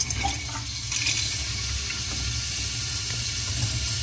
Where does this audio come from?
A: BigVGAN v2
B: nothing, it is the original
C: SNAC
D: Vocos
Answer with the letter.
B